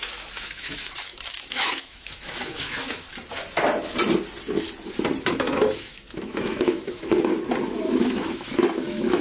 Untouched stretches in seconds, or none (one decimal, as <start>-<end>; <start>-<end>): 3.0-5.2; 7.3-7.9